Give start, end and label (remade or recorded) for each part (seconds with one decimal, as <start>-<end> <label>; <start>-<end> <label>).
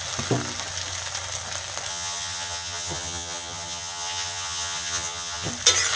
0.0-1.9 recorded; 1.9-5.5 remade; 5.5-6.0 recorded